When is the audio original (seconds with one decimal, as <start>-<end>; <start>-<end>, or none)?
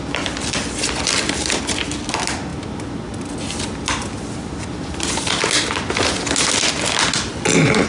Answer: 0.0-7.9